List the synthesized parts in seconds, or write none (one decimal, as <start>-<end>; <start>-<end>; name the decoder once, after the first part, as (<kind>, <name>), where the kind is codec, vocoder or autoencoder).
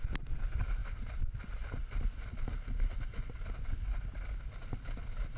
none